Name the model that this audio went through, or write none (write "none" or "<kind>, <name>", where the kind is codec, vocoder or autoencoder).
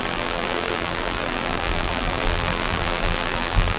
vocoder, BigVGAN v2